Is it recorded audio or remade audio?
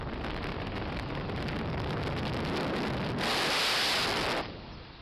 recorded